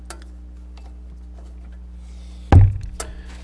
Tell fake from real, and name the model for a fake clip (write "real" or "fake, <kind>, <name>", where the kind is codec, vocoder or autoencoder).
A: real